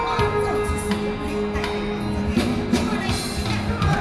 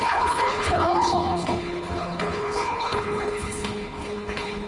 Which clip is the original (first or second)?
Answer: first